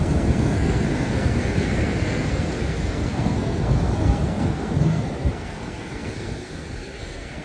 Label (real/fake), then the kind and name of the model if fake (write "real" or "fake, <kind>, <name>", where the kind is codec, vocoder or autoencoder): fake, codec, SNAC